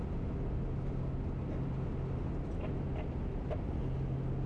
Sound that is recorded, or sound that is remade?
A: recorded